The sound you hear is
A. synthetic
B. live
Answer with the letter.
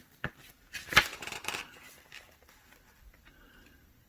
A